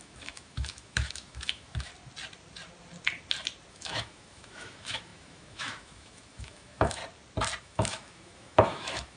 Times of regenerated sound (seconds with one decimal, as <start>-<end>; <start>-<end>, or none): 0.0-1.9; 3.7-7.0; 7.6-9.2